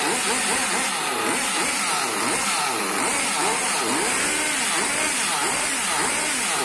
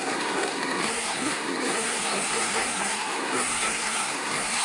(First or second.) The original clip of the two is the first